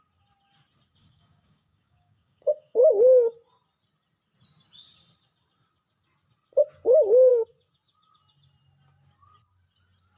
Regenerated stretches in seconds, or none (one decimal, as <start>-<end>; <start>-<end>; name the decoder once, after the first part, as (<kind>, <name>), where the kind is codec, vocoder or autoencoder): 1.0-2.9 (codec, DAC)